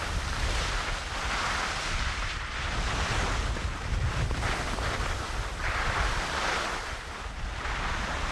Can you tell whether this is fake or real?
real